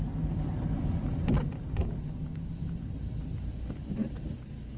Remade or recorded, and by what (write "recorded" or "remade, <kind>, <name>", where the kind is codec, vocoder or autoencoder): recorded